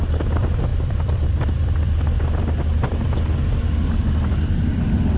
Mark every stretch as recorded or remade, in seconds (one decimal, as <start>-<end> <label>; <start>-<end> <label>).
0.0-0.7 recorded; 0.7-2.2 remade; 2.2-4.0 recorded; 4.0-5.2 remade